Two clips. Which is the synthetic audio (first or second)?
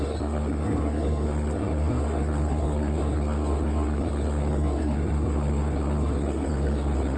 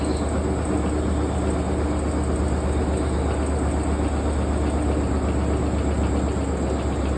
first